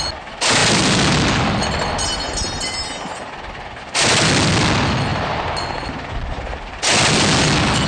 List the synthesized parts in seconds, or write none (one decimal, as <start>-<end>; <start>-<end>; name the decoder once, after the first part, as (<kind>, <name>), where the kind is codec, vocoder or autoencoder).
5.1-6.4 (vocoder, BigVGAN v2)